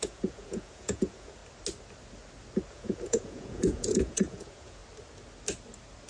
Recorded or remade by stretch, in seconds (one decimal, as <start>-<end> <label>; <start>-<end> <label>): 0.0-1.4 remade; 1.4-2.7 recorded; 2.7-4.8 remade; 4.8-6.1 recorded

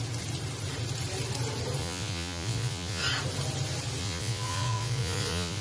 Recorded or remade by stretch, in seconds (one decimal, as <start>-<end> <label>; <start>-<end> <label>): 0.0-1.8 recorded; 1.8-3.0 remade; 3.0-4.0 recorded; 4.0-5.6 remade

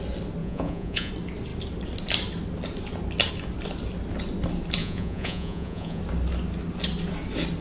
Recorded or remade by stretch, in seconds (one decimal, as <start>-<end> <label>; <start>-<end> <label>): 0.0-0.4 recorded; 0.4-1.1 remade; 1.1-4.8 recorded; 4.8-6.0 remade; 6.0-7.6 recorded

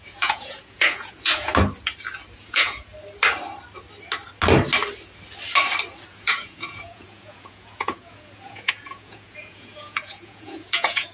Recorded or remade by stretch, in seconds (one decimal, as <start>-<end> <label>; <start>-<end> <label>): 0.0-1.5 remade; 1.5-2.4 recorded; 2.4-2.9 remade; 2.9-6.1 recorded; 6.1-11.1 remade

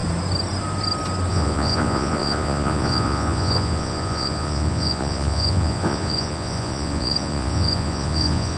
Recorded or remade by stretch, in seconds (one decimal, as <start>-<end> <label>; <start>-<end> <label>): 0.0-1.3 recorded; 1.3-8.6 remade

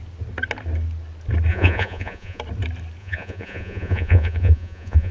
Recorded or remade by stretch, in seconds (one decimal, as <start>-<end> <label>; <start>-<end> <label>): 0.0-1.5 recorded; 1.5-2.4 remade; 2.4-3.0 recorded; 3.0-5.1 remade

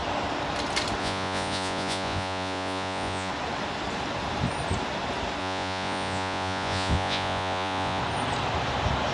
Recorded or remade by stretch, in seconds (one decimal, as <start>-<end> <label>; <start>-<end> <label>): 0.0-1.0 recorded; 1.0-3.3 remade; 3.3-5.4 recorded; 5.4-8.0 remade; 8.0-9.1 recorded